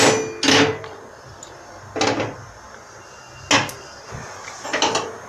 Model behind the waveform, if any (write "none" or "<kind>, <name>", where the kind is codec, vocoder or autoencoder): none